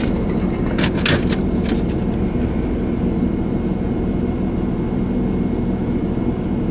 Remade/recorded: recorded